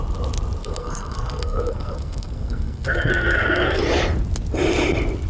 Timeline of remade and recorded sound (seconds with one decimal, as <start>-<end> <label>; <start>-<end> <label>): 0.0-0.6 recorded; 0.6-3.8 remade; 3.8-5.3 recorded